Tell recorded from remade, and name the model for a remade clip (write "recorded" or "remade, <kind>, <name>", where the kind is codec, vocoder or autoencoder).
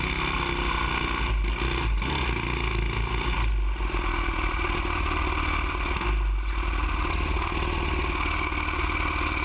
recorded